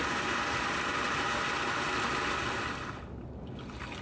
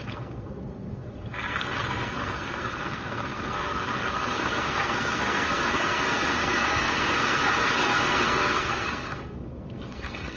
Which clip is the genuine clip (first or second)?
first